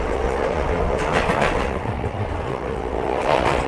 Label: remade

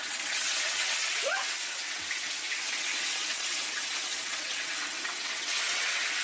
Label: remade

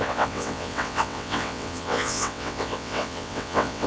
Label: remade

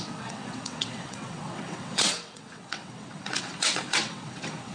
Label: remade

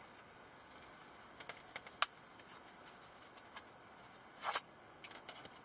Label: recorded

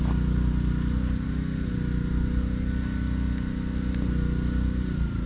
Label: recorded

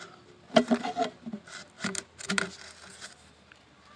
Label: recorded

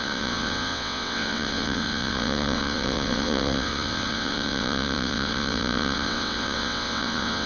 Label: remade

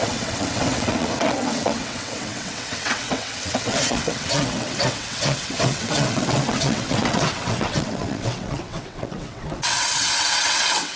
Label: remade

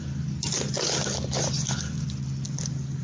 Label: recorded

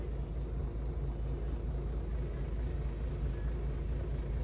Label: recorded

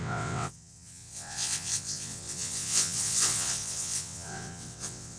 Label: remade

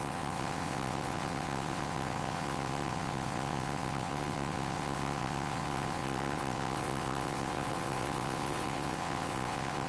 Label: remade